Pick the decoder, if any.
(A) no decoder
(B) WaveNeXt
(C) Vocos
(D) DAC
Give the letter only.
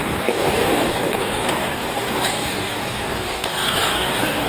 D